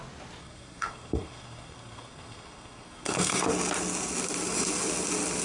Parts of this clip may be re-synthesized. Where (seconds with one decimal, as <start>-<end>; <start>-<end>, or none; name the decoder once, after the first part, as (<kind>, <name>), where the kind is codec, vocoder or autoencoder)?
0.4-3.4 (codec, SNAC)